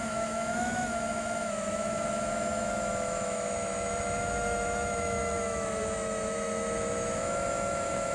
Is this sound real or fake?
fake